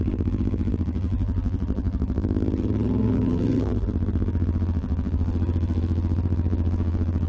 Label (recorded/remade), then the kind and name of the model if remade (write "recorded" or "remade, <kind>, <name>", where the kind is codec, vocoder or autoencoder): remade, vocoder, BigVGAN v2